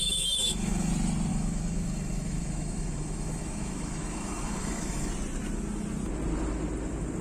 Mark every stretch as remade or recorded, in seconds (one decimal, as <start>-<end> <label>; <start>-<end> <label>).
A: 0.0-0.9 remade; 0.9-1.3 recorded; 1.3-5.1 remade; 5.1-7.2 recorded